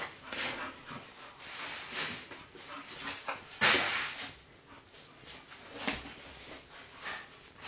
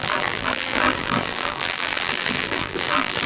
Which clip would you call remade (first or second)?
second